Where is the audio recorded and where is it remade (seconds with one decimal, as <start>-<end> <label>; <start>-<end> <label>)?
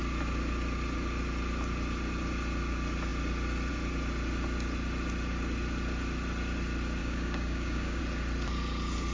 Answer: 0.0-7.0 recorded; 7.0-8.0 remade; 8.0-9.1 recorded